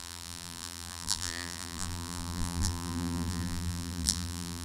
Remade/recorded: remade